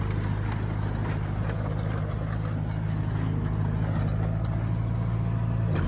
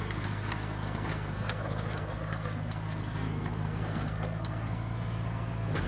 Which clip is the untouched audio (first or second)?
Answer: first